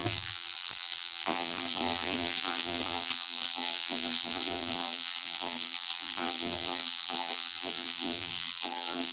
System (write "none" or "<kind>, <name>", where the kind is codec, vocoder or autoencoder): vocoder, BigVGAN v2